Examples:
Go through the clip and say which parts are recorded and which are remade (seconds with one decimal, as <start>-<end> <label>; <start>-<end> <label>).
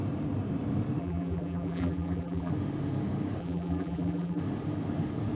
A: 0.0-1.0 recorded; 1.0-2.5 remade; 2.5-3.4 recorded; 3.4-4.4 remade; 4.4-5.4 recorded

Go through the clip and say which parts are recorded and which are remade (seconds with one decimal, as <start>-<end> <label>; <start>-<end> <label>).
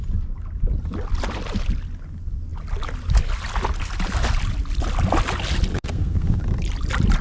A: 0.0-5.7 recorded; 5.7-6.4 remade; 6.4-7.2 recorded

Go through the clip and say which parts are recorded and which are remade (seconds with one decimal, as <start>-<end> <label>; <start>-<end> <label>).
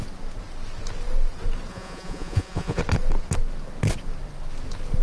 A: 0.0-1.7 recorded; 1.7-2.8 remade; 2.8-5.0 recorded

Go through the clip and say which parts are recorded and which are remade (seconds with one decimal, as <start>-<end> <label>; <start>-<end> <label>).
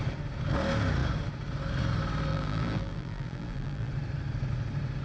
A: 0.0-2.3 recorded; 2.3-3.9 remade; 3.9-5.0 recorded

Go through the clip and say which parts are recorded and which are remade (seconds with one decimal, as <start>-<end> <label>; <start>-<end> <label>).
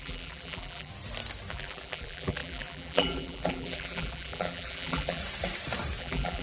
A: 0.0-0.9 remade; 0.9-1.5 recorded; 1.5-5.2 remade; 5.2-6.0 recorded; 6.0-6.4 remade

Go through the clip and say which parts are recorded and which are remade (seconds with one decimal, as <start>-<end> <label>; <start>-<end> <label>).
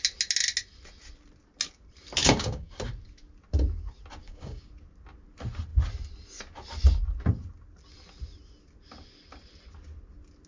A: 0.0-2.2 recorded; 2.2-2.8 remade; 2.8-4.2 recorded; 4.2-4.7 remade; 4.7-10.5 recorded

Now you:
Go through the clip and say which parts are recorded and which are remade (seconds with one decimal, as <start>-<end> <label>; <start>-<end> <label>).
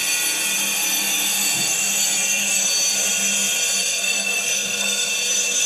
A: 0.0-3.8 recorded; 3.8-5.1 remade; 5.1-5.7 recorded